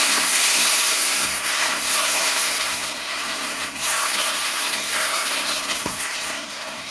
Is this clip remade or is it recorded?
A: remade